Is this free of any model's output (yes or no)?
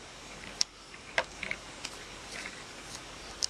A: no